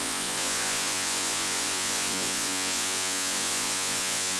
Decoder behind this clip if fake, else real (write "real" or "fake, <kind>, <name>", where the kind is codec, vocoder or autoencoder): fake, vocoder, Vocos